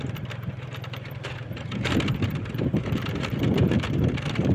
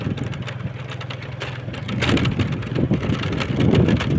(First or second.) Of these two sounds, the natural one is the second